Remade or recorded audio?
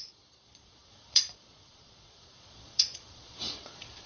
remade